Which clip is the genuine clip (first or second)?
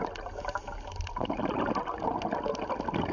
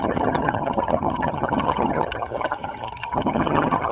first